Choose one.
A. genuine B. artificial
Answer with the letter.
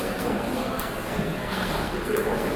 B